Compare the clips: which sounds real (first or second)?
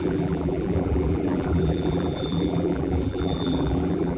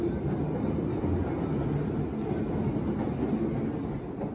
second